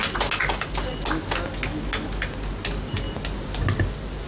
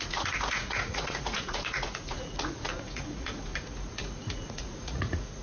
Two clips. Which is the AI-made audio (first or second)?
second